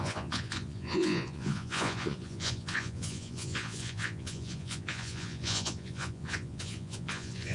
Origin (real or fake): fake